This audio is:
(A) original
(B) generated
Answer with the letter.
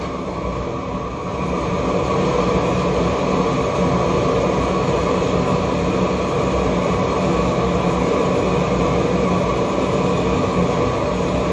A